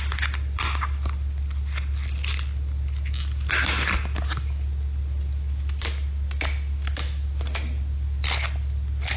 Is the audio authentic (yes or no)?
yes